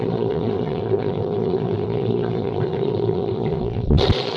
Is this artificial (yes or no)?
yes